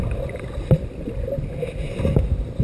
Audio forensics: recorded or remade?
recorded